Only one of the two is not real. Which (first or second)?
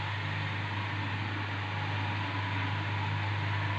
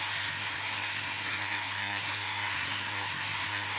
second